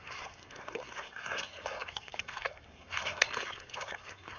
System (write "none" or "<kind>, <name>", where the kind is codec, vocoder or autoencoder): codec, SNAC